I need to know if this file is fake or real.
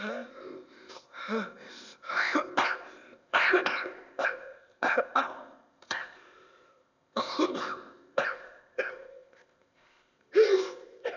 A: fake